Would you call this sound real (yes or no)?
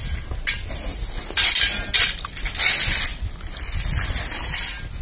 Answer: yes